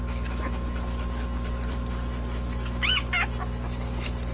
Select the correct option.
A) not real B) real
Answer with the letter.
B